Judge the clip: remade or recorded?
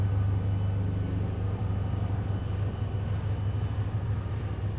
recorded